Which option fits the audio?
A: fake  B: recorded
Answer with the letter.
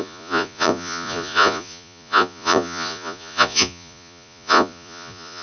A